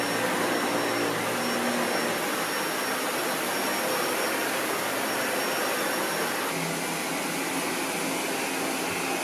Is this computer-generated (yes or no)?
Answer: no